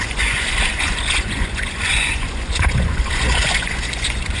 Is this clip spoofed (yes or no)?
yes